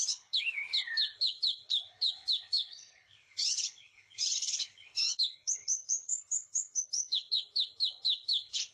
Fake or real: fake